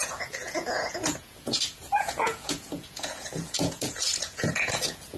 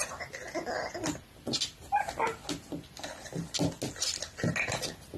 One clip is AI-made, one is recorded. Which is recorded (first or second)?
second